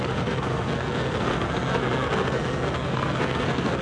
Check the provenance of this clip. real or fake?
fake